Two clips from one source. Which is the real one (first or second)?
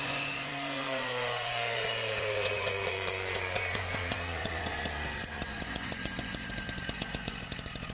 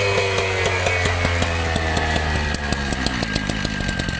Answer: second